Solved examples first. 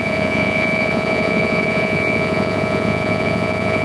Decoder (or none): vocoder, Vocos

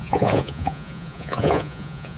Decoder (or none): vocoder, Vocos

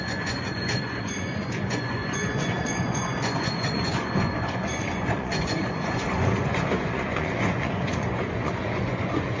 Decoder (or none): vocoder, Vocos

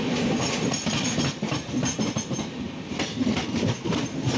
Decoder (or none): none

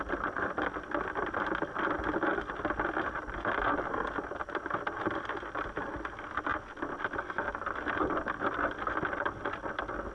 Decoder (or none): none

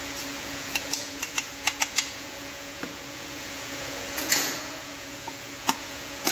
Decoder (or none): vocoder, Vocos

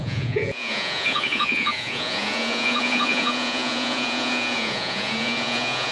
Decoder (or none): vocoder, Vocos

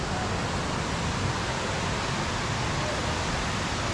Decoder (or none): none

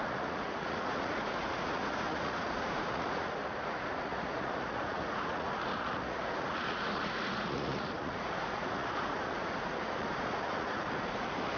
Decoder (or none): vocoder, Vocos